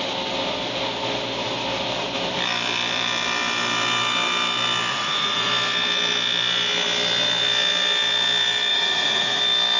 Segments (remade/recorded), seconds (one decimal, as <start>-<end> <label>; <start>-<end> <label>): 0.0-4.9 recorded; 4.9-5.5 remade; 5.5-8.7 recorded; 8.7-9.4 remade; 9.4-9.8 recorded